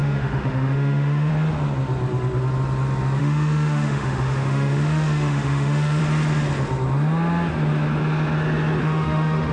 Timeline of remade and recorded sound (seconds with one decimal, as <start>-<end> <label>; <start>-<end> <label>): 0.0-1.3 remade; 1.3-3.2 recorded; 3.2-6.0 remade; 6.0-8.8 recorded; 8.8-9.5 remade